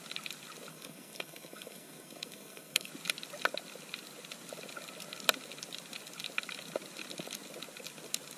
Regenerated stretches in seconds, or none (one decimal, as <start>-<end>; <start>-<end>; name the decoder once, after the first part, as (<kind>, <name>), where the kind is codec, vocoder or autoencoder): 0.7-2.9 (codec, SNAC)